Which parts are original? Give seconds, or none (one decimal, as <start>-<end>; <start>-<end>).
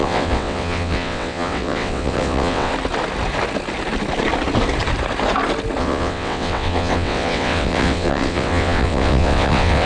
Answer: 2.7-5.8